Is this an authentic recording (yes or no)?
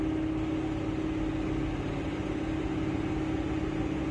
yes